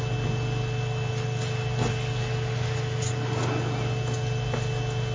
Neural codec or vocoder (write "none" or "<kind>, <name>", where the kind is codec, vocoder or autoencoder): none